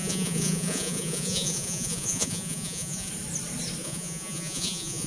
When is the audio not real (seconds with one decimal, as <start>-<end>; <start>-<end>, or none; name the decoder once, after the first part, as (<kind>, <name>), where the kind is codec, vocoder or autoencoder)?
0.0-3.1 (vocoder, Vocos); 3.8-5.1